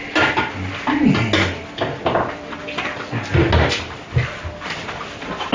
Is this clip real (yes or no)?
yes